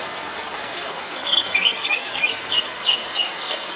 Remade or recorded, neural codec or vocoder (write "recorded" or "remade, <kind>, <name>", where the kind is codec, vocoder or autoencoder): remade, codec, SNAC